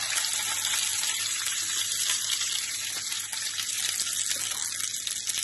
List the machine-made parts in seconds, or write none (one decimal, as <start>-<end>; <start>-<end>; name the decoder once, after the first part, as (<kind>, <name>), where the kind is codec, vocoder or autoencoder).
0.9-3.9 (vocoder, BigVGAN v2)